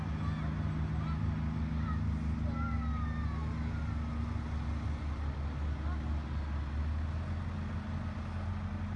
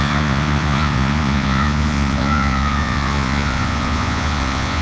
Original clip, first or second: first